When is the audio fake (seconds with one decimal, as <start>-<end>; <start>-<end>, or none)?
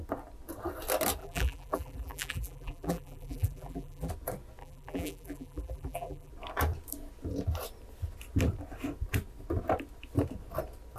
1.2-4.1; 4.6-6.3